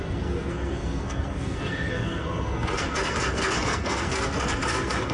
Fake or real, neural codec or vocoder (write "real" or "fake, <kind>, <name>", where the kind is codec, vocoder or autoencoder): fake, codec, SNAC